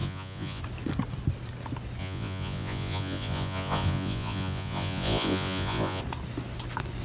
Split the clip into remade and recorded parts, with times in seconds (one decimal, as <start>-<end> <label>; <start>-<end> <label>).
0.0-0.6 remade; 0.6-2.0 recorded; 2.0-6.0 remade; 6.0-7.0 recorded